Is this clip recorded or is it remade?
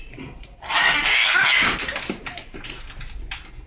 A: recorded